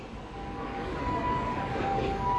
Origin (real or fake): fake